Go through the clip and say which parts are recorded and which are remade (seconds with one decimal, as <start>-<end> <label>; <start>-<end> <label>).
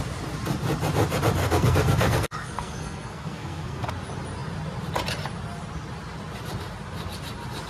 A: 0.0-1.4 recorded; 1.4-3.9 remade; 3.9-7.7 recorded